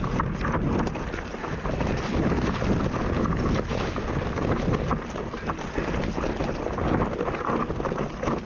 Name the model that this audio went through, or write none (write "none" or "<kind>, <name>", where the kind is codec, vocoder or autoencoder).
none